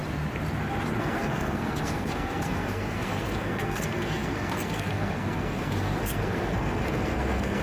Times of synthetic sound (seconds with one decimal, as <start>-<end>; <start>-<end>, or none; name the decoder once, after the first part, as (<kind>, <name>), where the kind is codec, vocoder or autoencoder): 1.0-7.6 (codec, SNAC)